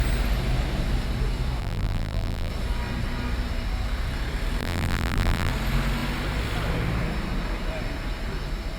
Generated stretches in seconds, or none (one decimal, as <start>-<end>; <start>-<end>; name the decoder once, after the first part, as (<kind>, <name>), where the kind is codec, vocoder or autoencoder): 1.6-2.5 (vocoder, BigVGAN v2); 4.6-5.5